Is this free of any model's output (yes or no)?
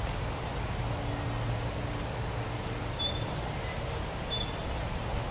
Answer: yes